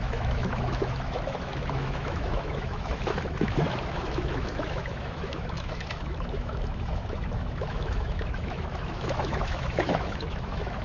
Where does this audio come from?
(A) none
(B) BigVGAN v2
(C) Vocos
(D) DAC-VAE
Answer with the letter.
D